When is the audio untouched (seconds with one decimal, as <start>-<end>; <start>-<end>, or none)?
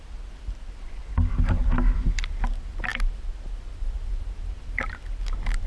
0.0-5.7